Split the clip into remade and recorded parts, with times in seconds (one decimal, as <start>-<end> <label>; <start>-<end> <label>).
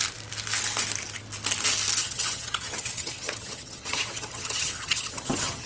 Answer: 0.0-2.0 recorded; 2.0-5.7 remade